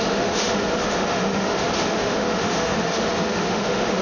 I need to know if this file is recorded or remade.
remade